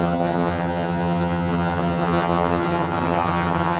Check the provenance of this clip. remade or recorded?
remade